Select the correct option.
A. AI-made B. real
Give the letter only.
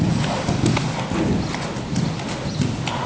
B